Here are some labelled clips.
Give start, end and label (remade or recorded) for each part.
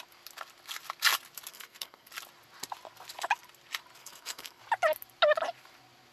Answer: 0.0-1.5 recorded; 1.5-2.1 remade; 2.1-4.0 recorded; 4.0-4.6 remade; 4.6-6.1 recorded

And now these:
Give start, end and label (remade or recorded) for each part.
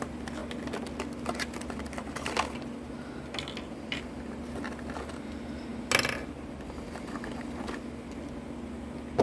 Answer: 0.0-9.2 recorded